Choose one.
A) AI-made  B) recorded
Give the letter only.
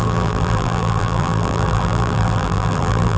A